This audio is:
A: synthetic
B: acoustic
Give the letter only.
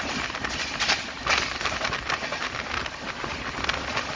B